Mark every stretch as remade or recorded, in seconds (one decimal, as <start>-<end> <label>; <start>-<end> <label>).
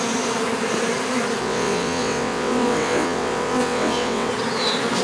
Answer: 0.0-1.4 recorded; 1.4-4.3 remade; 4.3-5.0 recorded